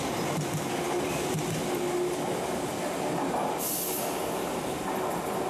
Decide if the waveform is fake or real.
real